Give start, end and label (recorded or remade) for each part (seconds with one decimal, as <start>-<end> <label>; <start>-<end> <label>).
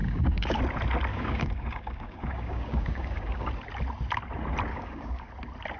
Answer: 0.0-0.6 remade; 0.6-1.1 recorded; 1.1-3.5 remade; 3.5-4.7 recorded; 4.7-5.3 remade; 5.3-5.8 recorded